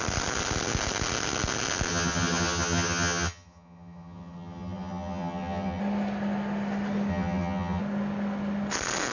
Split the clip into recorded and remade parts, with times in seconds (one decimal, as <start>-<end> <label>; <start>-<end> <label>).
0.0-1.9 recorded; 1.9-5.8 remade; 5.8-7.1 recorded; 7.1-7.8 remade; 7.8-9.1 recorded